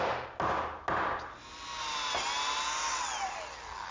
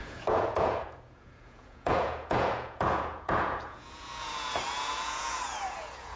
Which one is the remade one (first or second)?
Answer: second